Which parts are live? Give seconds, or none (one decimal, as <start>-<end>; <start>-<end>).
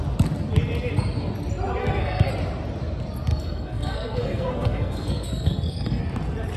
0.0-1.8; 2.3-3.3; 6.0-6.6